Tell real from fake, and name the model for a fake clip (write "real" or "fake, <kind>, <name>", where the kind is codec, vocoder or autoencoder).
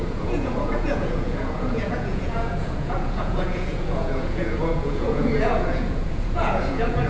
fake, vocoder, Vocos